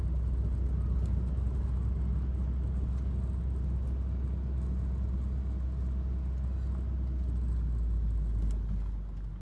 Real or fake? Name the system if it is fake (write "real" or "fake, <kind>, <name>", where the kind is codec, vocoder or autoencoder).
real